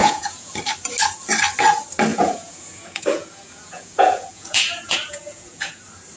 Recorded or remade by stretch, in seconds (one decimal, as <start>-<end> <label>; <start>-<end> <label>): 0.0-0.5 remade; 0.5-2.1 recorded; 2.1-5.8 remade; 5.8-6.2 recorded